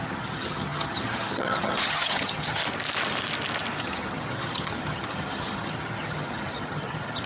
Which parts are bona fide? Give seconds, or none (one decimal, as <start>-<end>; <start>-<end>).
2.6-3.8